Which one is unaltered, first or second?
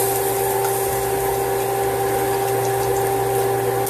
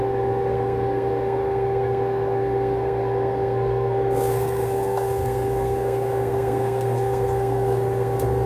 first